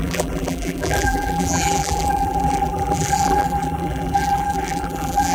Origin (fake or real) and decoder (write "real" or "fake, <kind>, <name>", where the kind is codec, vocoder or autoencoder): fake, vocoder, BigVGAN v2